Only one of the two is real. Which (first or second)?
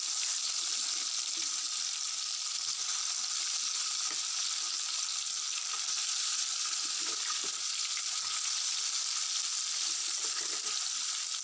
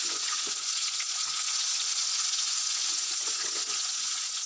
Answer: first